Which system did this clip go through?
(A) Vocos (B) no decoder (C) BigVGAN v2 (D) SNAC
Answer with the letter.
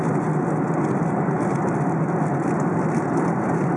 B